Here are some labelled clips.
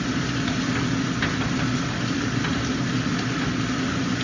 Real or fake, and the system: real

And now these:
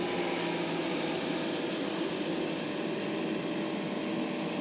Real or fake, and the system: real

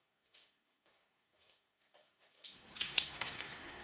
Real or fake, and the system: fake, codec, SNAC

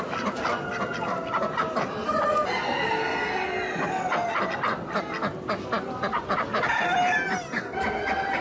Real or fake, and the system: real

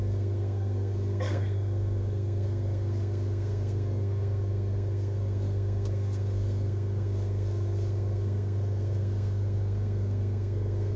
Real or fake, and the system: fake, codec, SNAC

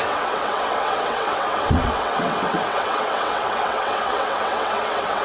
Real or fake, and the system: fake, vocoder, WaveNeXt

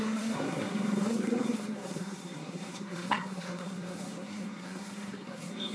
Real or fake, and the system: fake, codec, SNAC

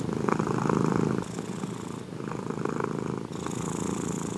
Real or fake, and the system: real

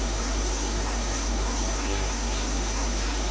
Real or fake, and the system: fake, codec, SNAC